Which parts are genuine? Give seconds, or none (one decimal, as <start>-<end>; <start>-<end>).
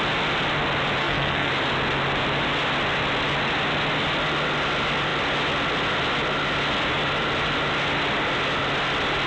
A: 0.0-1.0; 1.5-9.3